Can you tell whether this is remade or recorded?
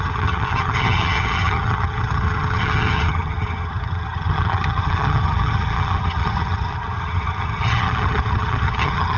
remade